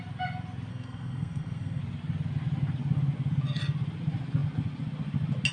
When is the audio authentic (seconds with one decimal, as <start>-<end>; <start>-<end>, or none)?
0.0-0.7; 1.8-5.5